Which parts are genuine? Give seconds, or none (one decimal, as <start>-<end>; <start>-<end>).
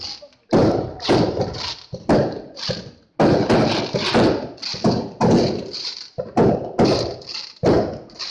0.0-0.6; 1.5-8.3